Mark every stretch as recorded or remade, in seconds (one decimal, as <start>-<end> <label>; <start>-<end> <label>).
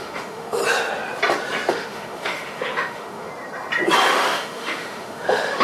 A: 0.0-0.6 remade; 0.6-1.7 recorded; 1.7-3.3 remade; 3.3-4.1 recorded; 4.1-5.6 remade